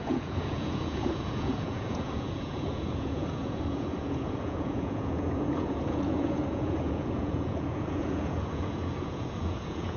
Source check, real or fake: fake